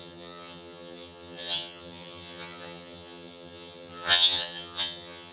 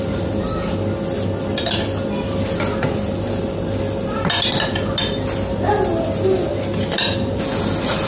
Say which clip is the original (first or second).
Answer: second